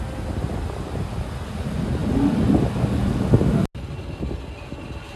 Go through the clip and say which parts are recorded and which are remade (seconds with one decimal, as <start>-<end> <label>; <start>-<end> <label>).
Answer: 0.0-5.2 recorded